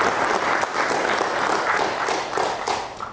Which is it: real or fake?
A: real